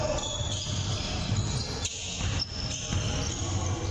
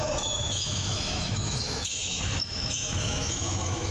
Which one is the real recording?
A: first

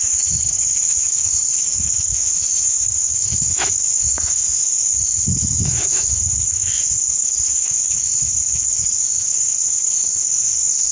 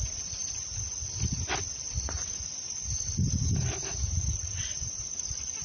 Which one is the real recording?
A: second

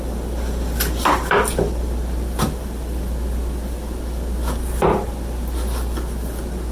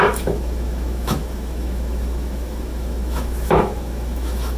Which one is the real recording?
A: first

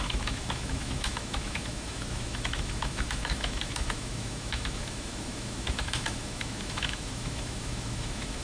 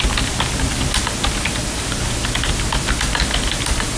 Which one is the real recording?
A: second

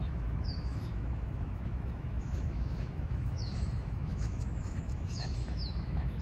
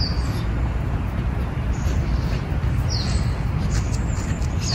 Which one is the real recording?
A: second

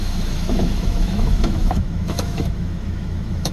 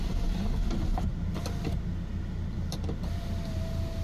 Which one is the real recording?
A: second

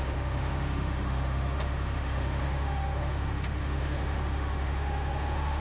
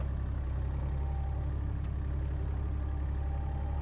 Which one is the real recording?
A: second